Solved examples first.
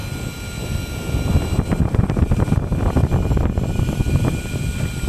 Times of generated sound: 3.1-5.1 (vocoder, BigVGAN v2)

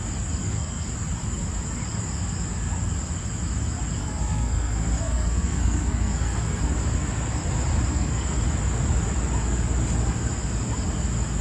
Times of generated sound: 0.4-0.9 (codec, SNAC); 4.0-6.6; 7.9-8.4